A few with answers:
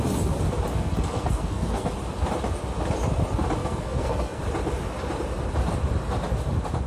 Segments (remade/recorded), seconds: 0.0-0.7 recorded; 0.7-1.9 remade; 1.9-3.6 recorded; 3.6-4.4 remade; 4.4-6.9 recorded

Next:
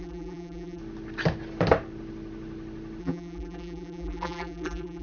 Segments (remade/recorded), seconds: 0.0-0.8 remade; 0.8-3.0 recorded; 3.0-5.0 remade

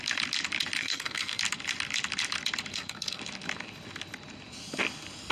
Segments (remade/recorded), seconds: 0.0-0.8 recorded; 0.8-1.4 remade; 1.4-2.7 recorded; 2.7-3.2 remade; 3.2-5.3 recorded

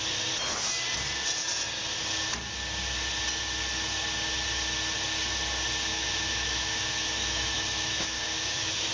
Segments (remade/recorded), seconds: 0.0-5.9 recorded; 5.9-8.9 remade

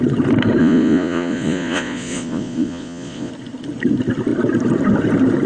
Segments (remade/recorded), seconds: 0.0-0.6 recorded; 0.6-3.3 remade; 3.3-5.5 recorded

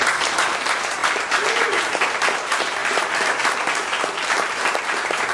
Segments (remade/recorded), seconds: 0.0-5.3 recorded

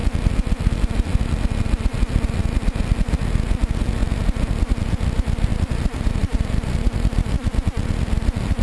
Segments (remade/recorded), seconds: 0.0-5.5 recorded; 5.5-8.6 remade

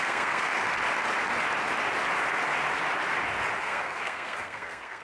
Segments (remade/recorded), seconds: 0.0-0.6 remade; 0.6-3.6 recorded; 3.6-5.0 remade